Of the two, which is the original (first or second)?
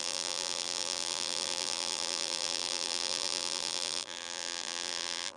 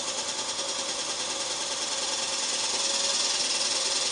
second